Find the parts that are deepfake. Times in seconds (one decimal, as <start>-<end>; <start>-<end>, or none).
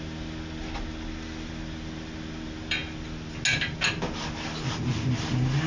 none